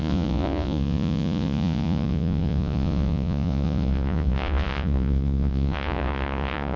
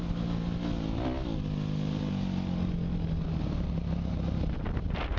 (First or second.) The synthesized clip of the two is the first